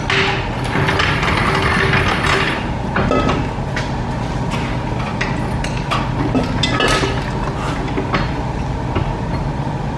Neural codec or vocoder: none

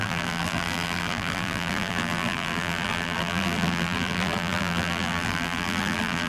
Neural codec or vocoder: vocoder, BigVGAN v2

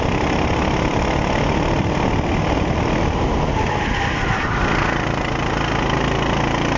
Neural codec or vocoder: none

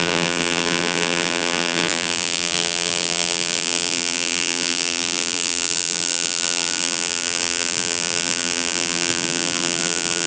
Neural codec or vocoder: vocoder, BigVGAN v2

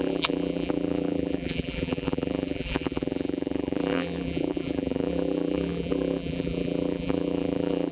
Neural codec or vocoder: vocoder, BigVGAN v2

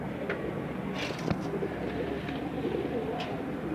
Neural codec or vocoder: vocoder, BigVGAN v2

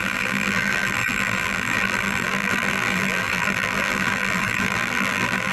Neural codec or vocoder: vocoder, BigVGAN v2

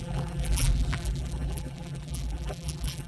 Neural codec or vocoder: vocoder, BigVGAN v2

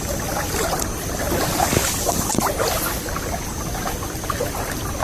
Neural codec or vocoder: none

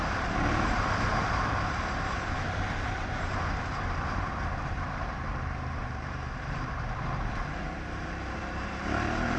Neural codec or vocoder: vocoder, BigVGAN v2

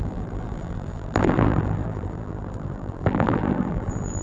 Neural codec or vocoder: vocoder, BigVGAN v2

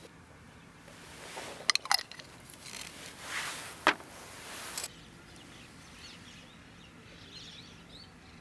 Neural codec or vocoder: none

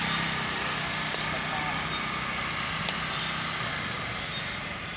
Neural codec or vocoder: none